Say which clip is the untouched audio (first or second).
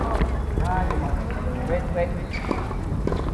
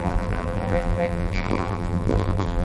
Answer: first